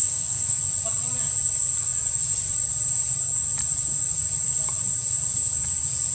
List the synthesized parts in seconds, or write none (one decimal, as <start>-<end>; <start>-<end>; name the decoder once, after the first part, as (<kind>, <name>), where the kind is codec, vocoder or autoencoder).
0.0-0.6 (codec, SNAC)